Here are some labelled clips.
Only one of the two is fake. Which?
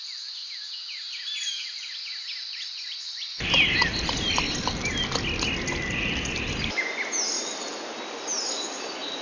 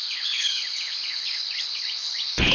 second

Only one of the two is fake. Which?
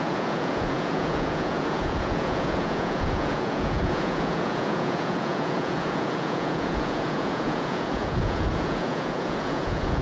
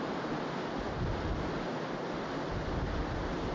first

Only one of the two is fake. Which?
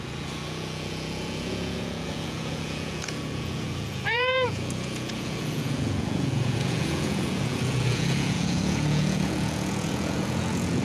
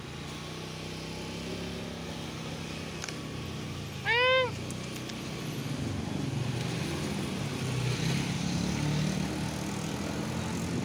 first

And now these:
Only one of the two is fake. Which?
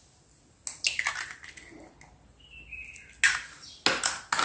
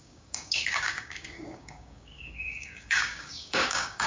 second